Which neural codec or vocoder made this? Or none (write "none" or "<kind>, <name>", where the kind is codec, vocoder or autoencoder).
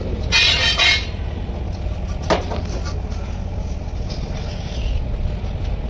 none